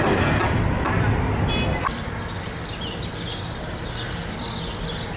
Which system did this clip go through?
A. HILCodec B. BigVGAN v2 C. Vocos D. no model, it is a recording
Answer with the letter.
D